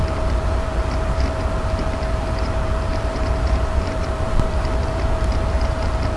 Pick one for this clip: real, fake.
fake